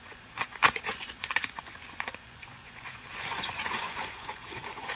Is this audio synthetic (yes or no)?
yes